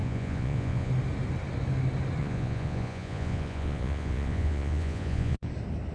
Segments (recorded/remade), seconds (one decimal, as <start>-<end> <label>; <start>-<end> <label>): 0.0-0.9 remade; 0.9-2.2 recorded; 2.2-5.5 remade; 5.5-5.9 recorded

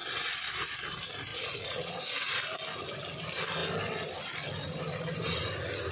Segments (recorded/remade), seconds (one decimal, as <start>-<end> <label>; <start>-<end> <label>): 0.0-1.3 recorded; 1.3-2.0 remade; 2.0-5.9 recorded

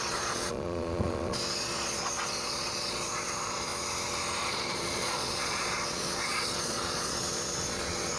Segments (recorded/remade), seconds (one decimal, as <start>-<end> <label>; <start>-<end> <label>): 0.0-3.7 remade; 3.7-4.4 recorded; 4.4-8.2 remade

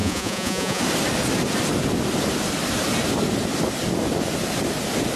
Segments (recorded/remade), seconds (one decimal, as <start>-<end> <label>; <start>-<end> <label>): 0.0-0.8 remade; 0.8-5.2 recorded

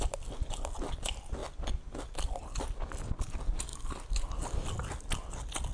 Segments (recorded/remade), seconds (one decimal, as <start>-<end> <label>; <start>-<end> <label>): 0.0-5.7 recorded

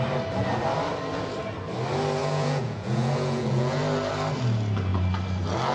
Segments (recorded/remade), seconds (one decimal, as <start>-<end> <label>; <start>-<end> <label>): 0.0-2.2 recorded; 2.2-3.8 remade; 3.8-5.7 recorded